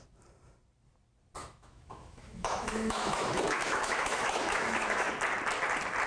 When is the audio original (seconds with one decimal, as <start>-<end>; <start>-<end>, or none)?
0.0-1.4; 5.1-6.1